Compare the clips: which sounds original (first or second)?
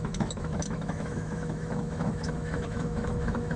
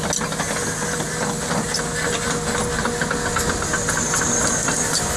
second